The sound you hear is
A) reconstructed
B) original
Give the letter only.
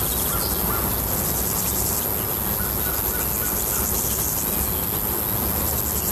B